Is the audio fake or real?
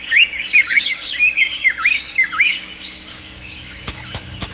fake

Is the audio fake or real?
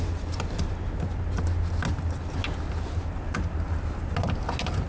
real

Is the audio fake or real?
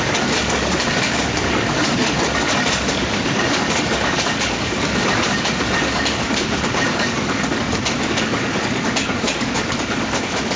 fake